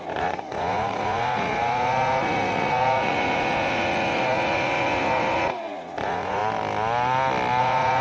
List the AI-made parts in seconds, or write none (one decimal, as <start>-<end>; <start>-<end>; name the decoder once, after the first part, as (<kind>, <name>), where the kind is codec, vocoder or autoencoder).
0.0-6.4 (vocoder, Vocos); 7.6-8.0